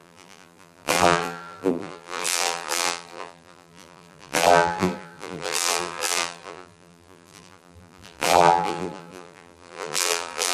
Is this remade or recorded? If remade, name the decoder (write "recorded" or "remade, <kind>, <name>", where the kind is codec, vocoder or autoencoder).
remade, vocoder, BigVGAN v2